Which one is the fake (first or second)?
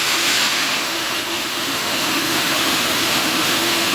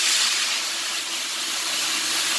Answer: first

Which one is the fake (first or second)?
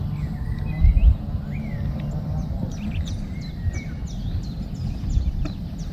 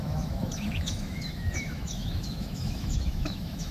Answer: second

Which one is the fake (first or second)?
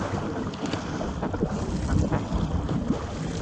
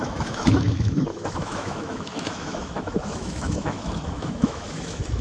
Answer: second